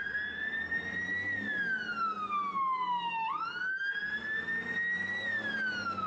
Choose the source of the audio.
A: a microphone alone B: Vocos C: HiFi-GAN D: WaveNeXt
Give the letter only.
A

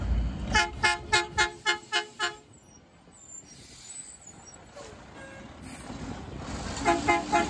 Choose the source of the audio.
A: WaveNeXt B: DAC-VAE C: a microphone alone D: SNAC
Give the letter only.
C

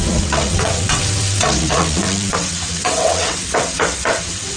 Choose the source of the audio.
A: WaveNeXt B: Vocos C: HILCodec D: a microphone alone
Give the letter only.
A